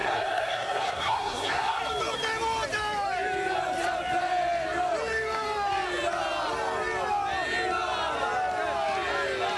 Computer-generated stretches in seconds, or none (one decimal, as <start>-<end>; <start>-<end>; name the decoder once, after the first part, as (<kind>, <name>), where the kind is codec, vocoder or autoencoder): 0.0-1.8 (codec, SNAC)